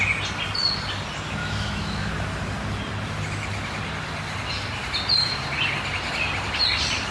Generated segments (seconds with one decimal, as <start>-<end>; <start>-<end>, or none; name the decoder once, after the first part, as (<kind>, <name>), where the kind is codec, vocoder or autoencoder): 1.4-2.1 (autoencoder, DAC-VAE)